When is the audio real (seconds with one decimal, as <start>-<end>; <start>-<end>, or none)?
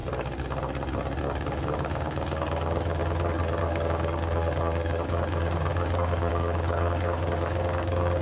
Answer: 0.0-1.2; 3.0-3.6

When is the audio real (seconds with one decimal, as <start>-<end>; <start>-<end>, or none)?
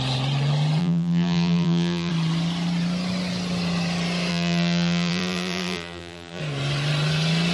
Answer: 0.0-0.8; 2.1-4.3; 6.4-7.5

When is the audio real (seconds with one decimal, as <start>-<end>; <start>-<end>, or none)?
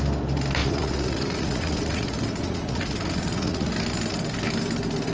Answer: 0.0-0.6; 3.7-5.1